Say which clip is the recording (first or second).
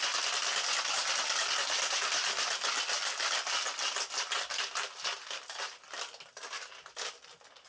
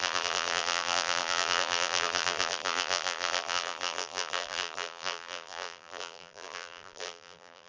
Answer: first